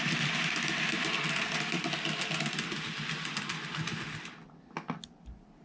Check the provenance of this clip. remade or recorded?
recorded